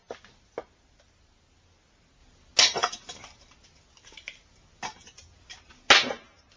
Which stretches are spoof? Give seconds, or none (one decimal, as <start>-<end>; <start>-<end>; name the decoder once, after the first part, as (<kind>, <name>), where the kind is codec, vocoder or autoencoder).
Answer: none